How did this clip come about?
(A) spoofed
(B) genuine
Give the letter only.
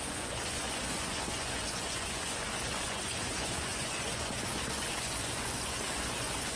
A